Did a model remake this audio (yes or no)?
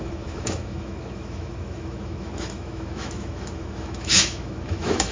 yes